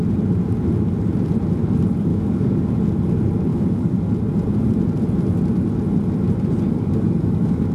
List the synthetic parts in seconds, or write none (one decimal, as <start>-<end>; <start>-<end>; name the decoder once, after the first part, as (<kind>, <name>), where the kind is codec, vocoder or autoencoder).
2.1-2.7 (codec, DAC); 3.5-4.0; 6.7-7.7